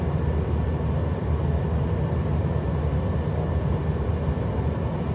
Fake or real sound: real